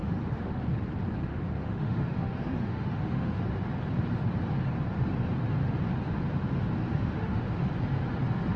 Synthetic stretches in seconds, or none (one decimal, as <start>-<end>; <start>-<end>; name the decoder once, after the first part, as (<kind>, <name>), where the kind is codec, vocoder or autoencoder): 0.0-0.5 (autoencoder, DAC-VAE); 1.3-3.4; 6.8-7.4